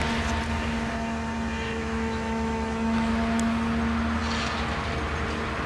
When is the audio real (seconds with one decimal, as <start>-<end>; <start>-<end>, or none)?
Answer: 0.0-1.8; 3.1-5.7